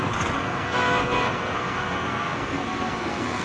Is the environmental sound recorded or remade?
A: remade